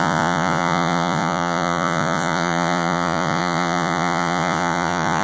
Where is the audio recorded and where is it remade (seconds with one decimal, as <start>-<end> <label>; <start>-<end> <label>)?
0.0-5.2 remade